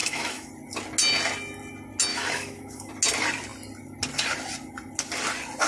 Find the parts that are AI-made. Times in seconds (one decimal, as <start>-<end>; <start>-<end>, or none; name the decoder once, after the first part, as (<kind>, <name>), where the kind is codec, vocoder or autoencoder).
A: 0.0-0.5 (autoencoder, DAC-VAE); 2.1-2.9